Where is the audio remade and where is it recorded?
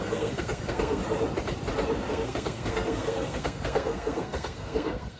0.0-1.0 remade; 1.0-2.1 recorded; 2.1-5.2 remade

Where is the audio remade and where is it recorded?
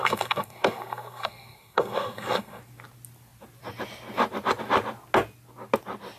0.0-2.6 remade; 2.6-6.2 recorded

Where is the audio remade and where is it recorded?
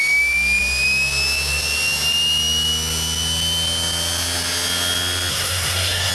0.0-5.3 recorded; 5.3-6.1 remade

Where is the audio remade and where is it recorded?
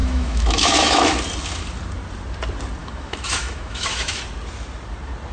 0.0-1.1 remade; 1.1-2.8 recorded; 2.8-4.2 remade; 4.2-5.3 recorded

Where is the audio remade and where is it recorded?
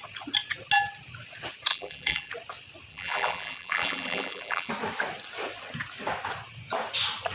0.0-1.7 recorded; 1.7-2.3 remade; 2.3-2.9 recorded; 2.9-4.7 remade; 4.7-7.3 recorded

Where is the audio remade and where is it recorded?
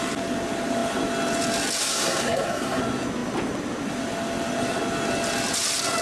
0.0-1.8 recorded; 1.8-2.8 remade; 2.8-6.0 recorded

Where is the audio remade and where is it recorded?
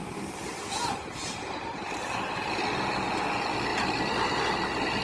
0.0-2.4 remade; 2.4-5.0 recorded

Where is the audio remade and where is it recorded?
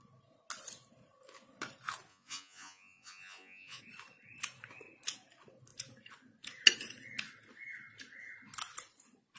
0.0-2.1 recorded; 2.1-3.8 remade; 3.8-9.4 recorded